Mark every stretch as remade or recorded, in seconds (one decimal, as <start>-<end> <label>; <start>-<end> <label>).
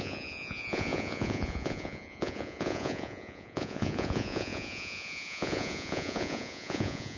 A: 0.0-7.2 remade